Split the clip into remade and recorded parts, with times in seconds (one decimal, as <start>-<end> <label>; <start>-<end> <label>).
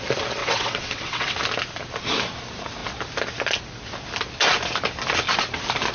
0.0-0.4 recorded; 0.4-1.4 remade; 1.4-5.9 recorded